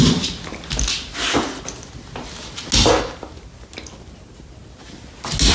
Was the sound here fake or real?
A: real